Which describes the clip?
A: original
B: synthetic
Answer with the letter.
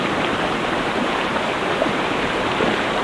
B